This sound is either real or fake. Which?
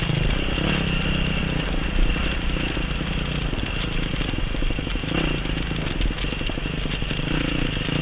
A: real